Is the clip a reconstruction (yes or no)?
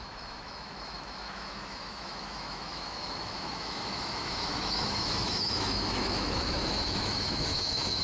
yes